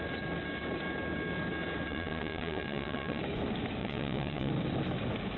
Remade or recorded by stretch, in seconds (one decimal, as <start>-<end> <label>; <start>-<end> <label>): 0.0-1.9 recorded; 1.9-3.2 remade; 3.2-3.8 recorded; 3.8-4.5 remade; 4.5-5.4 recorded